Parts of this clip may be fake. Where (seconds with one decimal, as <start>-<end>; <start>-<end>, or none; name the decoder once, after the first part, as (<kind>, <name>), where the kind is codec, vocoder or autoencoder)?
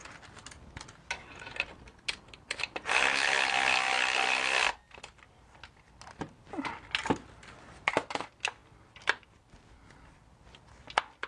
none